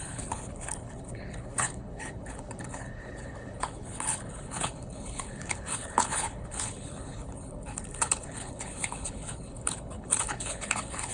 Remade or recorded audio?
remade